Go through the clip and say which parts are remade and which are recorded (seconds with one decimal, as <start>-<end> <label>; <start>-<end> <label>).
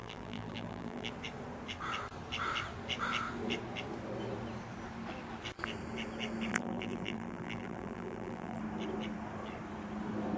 0.0-1.1 remade; 1.1-6.5 recorded; 6.5-8.6 remade; 8.6-10.4 recorded